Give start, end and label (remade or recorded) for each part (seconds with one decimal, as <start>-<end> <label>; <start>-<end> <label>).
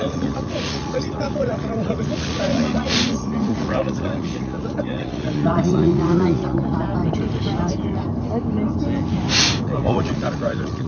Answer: 0.0-7.0 remade; 7.0-9.6 recorded; 9.6-10.9 remade